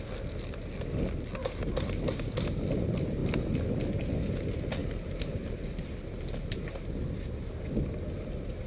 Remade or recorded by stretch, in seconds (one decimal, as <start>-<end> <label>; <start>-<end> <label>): 0.0-1.4 recorded; 1.4-2.2 remade; 2.2-4.8 recorded; 4.8-6.8 remade; 6.8-8.7 recorded